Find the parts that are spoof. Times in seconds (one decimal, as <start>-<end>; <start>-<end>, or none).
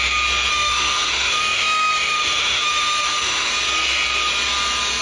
0.5-3.5